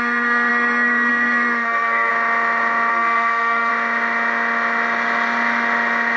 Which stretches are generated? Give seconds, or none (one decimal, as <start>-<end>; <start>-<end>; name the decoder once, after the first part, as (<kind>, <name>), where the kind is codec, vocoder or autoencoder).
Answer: 0.0-2.1 (codec, SNAC); 2.9-3.7